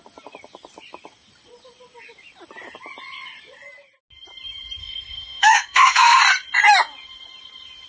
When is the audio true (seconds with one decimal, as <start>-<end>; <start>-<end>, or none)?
0.0-4.8; 6.2-7.9